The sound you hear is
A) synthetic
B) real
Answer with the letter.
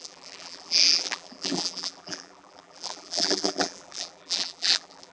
A